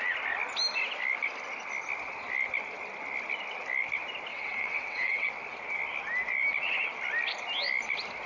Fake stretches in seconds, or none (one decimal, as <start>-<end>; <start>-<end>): 4.3-5.3